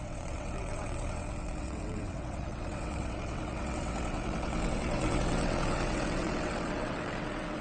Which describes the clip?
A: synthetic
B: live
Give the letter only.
A